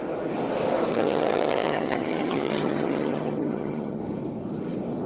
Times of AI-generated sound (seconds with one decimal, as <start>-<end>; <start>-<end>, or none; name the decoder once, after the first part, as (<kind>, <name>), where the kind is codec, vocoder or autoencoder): 0.9-4.0 (vocoder, HiFi-GAN)